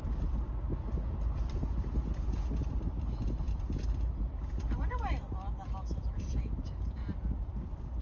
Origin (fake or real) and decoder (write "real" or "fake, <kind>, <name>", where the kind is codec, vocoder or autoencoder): real